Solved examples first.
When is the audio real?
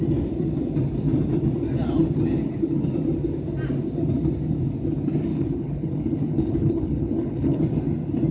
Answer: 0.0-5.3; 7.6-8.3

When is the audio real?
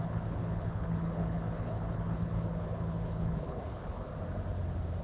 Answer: 4.1-5.0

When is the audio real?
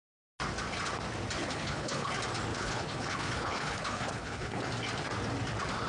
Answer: 0.0-1.4; 2.1-2.5; 4.7-5.9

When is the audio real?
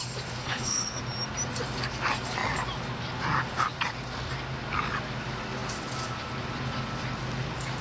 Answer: 0.0-0.4; 1.0-7.8